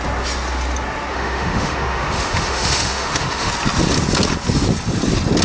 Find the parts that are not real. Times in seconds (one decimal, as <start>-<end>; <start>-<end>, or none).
1.1-3.5